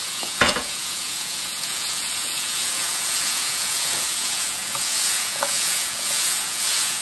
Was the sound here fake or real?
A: fake